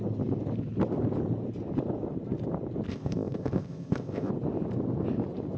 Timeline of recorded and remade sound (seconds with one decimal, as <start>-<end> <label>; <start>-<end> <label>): 0.0-2.9 recorded; 2.9-4.3 remade; 4.3-5.6 recorded